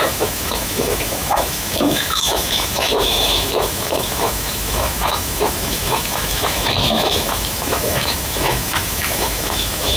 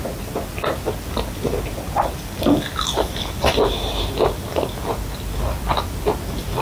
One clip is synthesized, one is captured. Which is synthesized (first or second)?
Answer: first